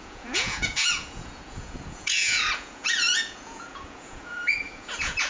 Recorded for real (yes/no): no